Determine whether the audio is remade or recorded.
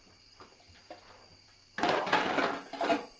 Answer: remade